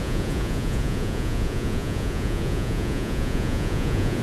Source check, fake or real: fake